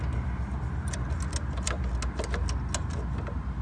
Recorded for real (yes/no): yes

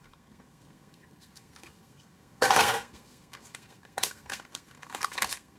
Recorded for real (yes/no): no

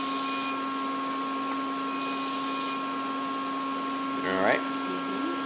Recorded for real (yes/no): yes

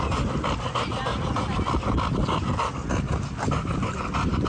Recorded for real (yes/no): yes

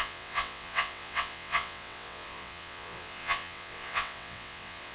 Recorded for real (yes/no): no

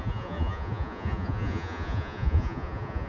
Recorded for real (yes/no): no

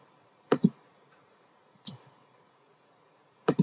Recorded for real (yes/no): no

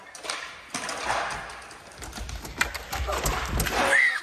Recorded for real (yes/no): yes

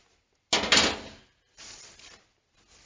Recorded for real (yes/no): yes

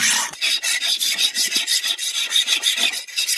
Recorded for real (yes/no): no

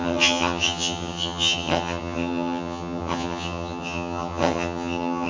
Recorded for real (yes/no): no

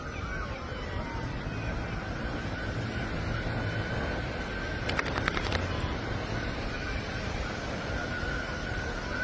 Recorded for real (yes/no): yes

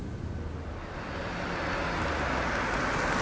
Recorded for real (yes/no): yes